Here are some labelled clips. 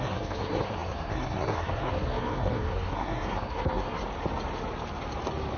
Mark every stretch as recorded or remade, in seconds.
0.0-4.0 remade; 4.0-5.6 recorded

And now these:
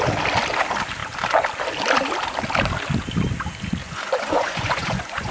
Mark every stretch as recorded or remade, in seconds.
0.0-3.8 recorded; 3.8-5.3 remade

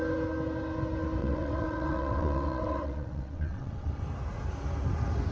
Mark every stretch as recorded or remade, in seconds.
0.0-1.2 recorded; 1.2-4.0 remade; 4.0-5.3 recorded

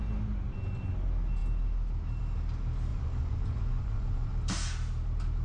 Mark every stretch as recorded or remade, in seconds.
0.0-2.9 recorded; 2.9-4.3 remade; 4.3-5.4 recorded